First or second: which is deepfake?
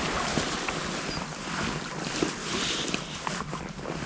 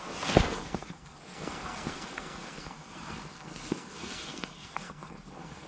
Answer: second